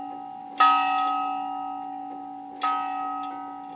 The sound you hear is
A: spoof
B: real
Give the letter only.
B